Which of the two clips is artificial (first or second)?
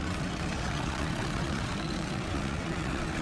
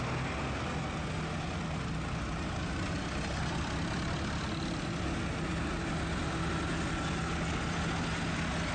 first